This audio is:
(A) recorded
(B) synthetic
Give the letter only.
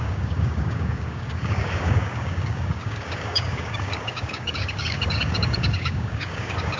B